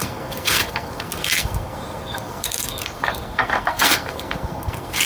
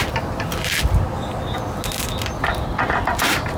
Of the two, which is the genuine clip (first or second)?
second